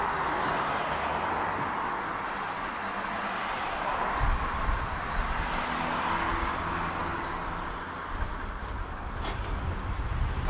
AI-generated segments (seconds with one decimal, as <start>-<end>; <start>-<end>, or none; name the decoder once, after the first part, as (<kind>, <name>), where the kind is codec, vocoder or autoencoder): none